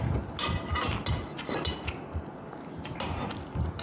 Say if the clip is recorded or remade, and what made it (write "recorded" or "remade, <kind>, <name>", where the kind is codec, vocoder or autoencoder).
recorded